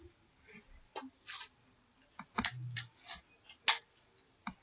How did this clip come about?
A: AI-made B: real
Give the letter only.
B